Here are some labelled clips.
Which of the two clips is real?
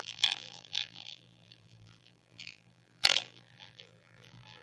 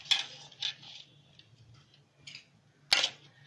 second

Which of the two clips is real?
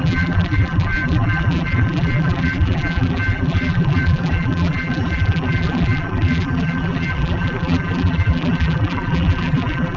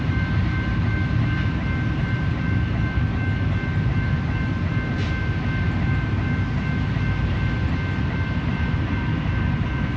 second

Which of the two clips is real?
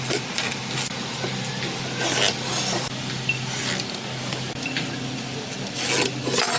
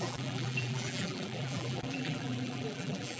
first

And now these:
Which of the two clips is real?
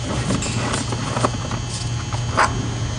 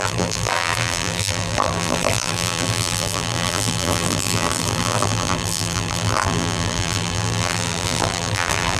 first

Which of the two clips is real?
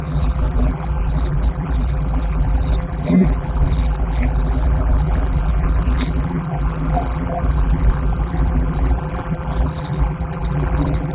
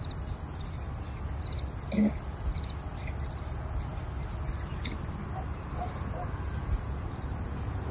second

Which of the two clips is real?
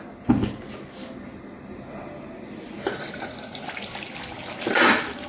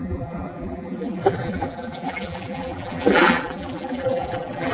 first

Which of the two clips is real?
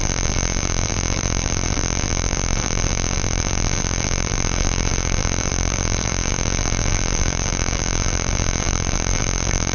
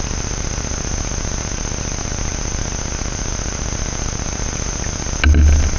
second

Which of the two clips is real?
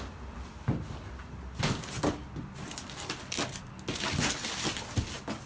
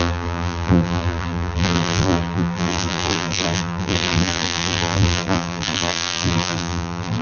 first